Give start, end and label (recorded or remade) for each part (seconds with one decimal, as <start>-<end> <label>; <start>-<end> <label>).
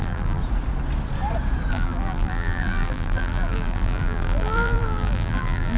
0.0-0.4 remade; 0.4-1.7 recorded; 1.7-5.8 remade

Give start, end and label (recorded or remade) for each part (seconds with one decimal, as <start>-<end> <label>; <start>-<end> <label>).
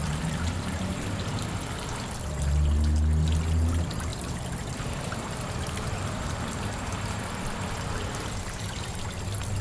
0.0-0.8 remade; 0.8-4.1 recorded; 4.1-8.0 remade; 8.0-9.6 recorded